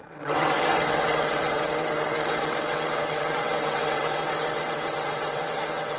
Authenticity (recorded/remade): remade